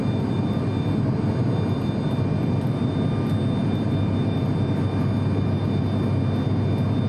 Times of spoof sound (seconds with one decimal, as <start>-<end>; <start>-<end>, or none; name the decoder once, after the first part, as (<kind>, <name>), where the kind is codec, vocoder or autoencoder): none